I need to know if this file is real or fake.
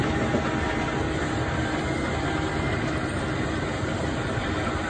real